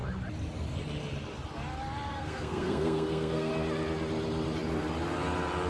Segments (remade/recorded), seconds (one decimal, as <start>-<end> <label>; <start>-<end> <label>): 0.0-2.1 recorded; 2.1-3.5 remade; 3.5-5.7 recorded